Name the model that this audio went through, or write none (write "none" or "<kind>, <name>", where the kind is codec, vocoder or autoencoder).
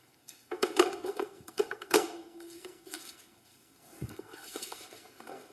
codec, SNAC